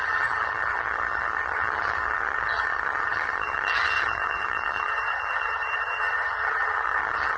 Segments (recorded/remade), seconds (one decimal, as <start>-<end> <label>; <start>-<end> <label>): 0.0-7.4 remade